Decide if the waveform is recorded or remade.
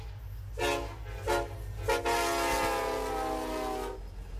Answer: recorded